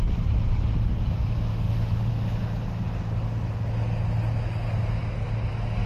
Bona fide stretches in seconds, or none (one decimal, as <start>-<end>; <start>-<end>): 0.0-1.5; 2.1-5.9